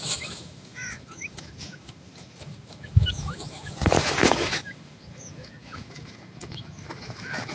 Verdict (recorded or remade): remade